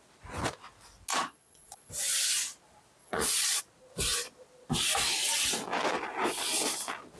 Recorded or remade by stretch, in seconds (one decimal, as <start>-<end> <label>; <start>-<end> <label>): 0.0-1.1 recorded; 1.1-1.9 remade; 1.9-3.0 recorded; 3.0-3.6 remade; 3.6-7.2 recorded